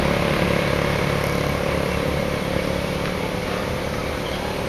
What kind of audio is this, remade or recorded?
recorded